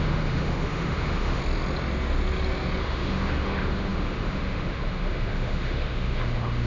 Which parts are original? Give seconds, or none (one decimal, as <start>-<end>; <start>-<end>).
1.4-2.8